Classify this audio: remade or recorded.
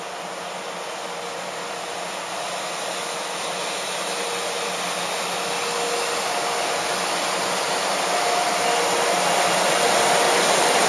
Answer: recorded